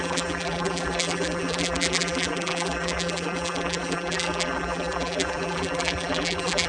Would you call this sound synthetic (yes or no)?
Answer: yes